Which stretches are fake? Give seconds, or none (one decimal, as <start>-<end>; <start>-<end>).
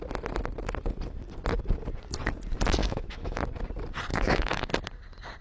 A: 2.8-3.4; 4.1-4.7